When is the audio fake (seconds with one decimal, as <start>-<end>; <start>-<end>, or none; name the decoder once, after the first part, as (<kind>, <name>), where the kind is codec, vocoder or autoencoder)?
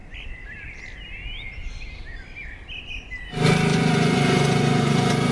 3.7-5.3 (vocoder, Vocos)